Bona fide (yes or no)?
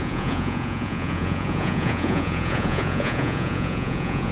no